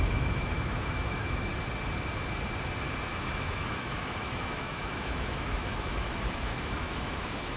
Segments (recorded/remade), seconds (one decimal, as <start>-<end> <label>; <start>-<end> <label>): 0.0-1.5 remade; 1.5-3.1 recorded; 3.1-7.6 remade